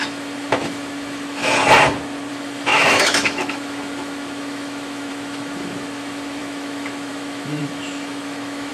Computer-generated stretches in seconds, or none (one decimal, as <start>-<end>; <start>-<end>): 0.0-1.6; 2.3-8.7